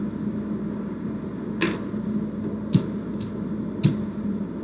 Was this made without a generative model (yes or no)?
yes